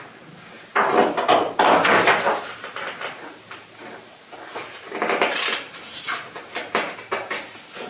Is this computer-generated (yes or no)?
no